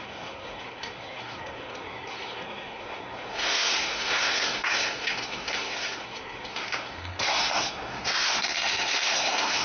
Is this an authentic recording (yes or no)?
no